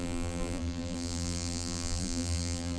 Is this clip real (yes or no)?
no